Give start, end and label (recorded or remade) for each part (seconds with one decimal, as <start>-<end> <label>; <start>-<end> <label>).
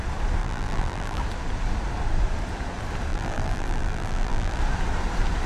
0.0-0.4 recorded; 0.4-1.2 remade; 1.2-3.1 recorded; 3.1-4.6 remade; 4.6-5.5 recorded